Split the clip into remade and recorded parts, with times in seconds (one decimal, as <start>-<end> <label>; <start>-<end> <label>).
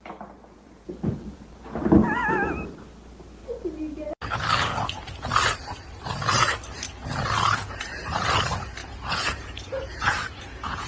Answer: 0.0-0.4 recorded; 0.4-1.5 remade; 1.5-8.8 recorded; 8.8-10.9 remade